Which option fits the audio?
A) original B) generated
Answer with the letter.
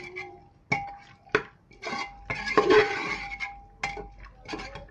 A